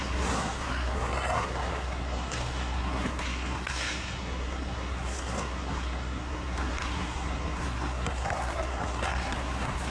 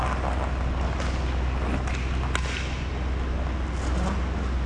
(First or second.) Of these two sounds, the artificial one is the first